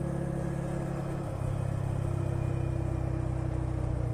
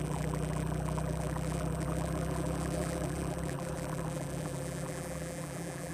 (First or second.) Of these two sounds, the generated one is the second